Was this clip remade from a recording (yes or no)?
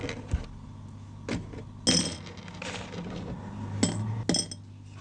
no